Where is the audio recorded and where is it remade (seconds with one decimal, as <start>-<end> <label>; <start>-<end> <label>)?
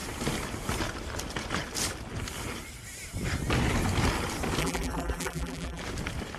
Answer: 0.0-4.6 recorded; 4.6-5.8 remade; 5.8-6.4 recorded